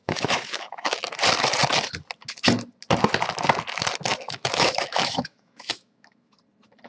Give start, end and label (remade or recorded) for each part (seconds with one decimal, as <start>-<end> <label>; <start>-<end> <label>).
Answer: 0.0-1.0 remade; 1.0-4.1 recorded; 4.1-6.3 remade; 6.3-6.9 recorded